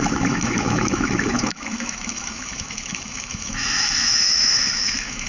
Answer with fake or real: fake